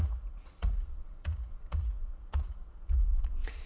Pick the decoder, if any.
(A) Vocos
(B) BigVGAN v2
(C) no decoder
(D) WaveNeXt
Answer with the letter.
A